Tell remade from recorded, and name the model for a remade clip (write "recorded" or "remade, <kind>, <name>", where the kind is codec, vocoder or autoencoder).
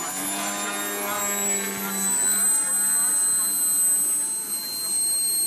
recorded